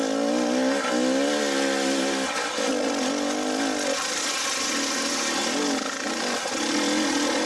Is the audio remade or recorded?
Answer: recorded